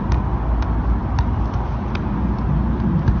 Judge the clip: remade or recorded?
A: recorded